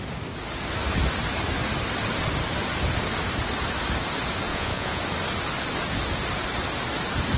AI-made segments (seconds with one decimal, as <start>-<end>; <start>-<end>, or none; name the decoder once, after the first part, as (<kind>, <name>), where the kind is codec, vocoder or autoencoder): 4.5-5.0 (vocoder, Vocos)